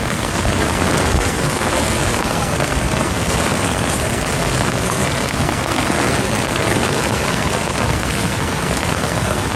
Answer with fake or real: fake